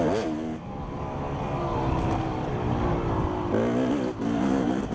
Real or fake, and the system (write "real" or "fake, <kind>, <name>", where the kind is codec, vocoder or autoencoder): real